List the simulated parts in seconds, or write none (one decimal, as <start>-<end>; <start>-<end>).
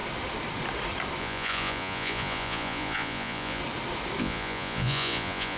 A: 1.2-3.6; 4.2-5.6